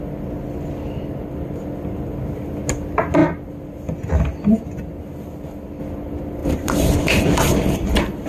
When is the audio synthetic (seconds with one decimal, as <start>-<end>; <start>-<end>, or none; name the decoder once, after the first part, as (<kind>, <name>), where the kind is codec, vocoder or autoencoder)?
6.4-8.3 (vocoder, BigVGAN v2)